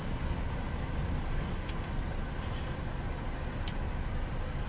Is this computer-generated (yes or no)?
no